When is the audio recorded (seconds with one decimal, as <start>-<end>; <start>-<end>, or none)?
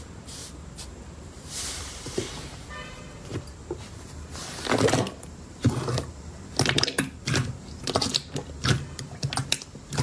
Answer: 0.4-1.0; 3.3-7.2; 8.1-10.0